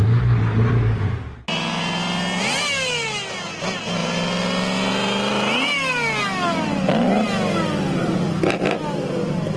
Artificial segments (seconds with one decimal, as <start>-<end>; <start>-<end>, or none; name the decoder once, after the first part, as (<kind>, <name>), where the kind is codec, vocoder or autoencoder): none